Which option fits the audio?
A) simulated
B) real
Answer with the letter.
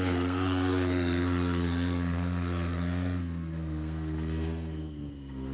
A